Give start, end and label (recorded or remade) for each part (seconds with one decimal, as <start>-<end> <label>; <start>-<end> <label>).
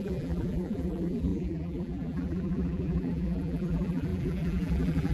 0.0-5.1 remade